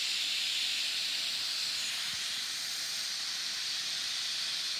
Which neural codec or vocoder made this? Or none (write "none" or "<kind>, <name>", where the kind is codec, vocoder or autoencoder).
none